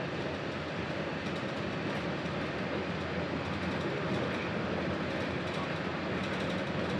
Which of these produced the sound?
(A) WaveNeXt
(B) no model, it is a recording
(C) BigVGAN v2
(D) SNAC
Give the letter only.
B